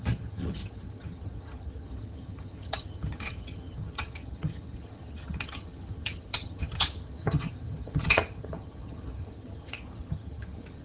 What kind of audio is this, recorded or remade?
remade